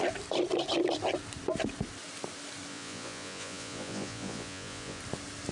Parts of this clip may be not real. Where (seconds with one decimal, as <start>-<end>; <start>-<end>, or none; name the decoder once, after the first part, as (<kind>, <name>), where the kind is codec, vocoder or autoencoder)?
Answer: 2.7-5.0 (vocoder, Vocos)